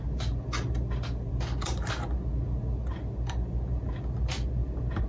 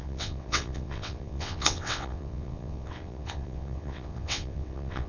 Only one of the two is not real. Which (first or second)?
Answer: second